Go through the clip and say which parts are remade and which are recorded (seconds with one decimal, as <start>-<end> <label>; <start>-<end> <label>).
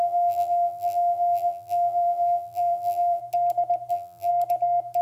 0.0-3.2 remade; 3.2-3.9 recorded; 3.9-4.3 remade; 4.3-5.0 recorded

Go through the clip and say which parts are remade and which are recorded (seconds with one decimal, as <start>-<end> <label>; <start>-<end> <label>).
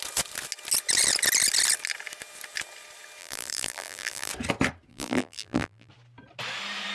0.0-3.2 recorded; 3.2-4.3 remade; 4.3-4.9 recorded; 4.9-5.9 remade; 5.9-6.9 recorded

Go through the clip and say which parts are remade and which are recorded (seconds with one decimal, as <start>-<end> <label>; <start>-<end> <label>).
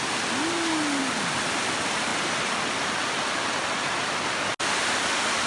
0.0-5.5 recorded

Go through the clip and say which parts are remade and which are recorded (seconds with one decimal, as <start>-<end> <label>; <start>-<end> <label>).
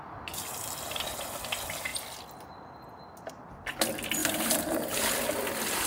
0.0-4.2 recorded; 4.2-5.1 remade; 5.1-5.9 recorded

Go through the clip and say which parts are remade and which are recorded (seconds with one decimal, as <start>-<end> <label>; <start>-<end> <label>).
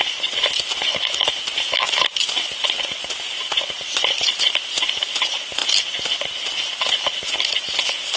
0.0-8.2 recorded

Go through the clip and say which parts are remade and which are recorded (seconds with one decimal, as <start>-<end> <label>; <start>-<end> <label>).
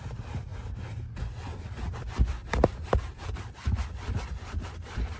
0.0-0.5 remade; 0.5-1.3 recorded; 1.3-2.4 remade; 2.4-3.2 recorded; 3.2-5.2 remade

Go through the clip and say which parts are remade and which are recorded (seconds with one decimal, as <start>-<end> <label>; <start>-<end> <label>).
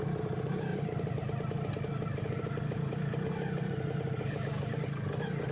0.0-0.7 recorded; 0.7-3.7 remade; 3.7-5.5 recorded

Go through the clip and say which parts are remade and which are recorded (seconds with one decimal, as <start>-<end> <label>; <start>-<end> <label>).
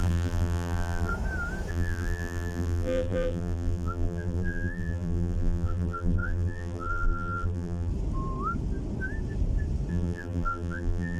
0.0-1.1 remade; 1.1-1.7 recorded; 1.7-7.9 remade; 7.9-9.9 recorded; 9.9-11.2 remade